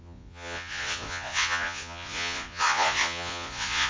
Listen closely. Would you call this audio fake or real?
fake